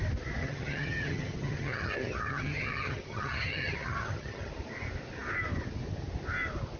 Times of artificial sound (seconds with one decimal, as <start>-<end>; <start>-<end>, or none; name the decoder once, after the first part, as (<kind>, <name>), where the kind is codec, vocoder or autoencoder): 0.4-4.5 (vocoder, HiFi-GAN)

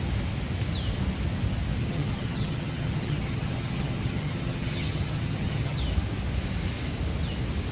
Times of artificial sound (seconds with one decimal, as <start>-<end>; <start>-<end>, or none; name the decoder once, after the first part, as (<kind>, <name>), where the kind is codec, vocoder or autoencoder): 1.8-5.8 (vocoder, HiFi-GAN)

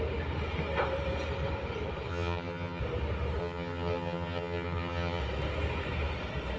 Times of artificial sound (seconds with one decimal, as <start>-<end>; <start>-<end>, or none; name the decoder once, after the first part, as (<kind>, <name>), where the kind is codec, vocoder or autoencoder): 2.1-2.8 (vocoder, HiFi-GAN); 3.4-5.2

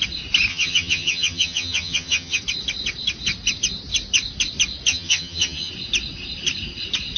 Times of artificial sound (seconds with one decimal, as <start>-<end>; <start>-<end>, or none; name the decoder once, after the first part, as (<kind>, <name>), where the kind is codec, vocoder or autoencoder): 0.5-2.4 (vocoder, HiFi-GAN); 4.9-5.7